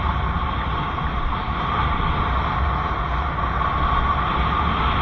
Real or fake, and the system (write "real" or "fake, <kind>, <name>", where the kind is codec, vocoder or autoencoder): real